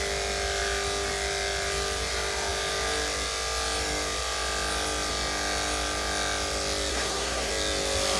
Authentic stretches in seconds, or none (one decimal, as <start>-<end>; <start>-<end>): 0.0-6.9; 7.5-8.2